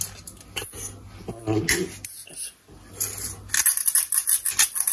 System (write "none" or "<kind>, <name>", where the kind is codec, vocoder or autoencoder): none